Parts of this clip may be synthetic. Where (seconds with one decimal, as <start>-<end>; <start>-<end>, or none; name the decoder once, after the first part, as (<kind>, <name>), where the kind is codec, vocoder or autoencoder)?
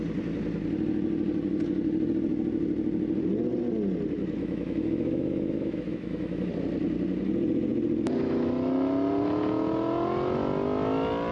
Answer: 4.4-6.5 (autoencoder, DAC-VAE)